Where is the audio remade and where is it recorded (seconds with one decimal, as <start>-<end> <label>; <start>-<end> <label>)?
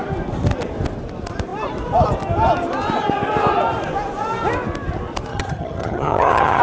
0.0-5.3 recorded; 5.3-6.6 remade